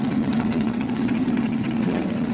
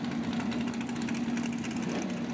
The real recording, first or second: second